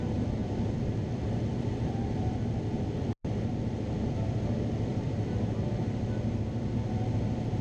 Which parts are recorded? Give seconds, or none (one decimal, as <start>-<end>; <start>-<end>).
0.0-0.4; 3.4-4.9; 5.9-7.6

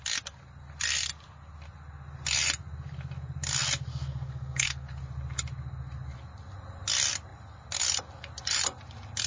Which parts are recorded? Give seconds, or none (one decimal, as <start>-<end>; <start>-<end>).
0.0-3.9; 5.0-9.3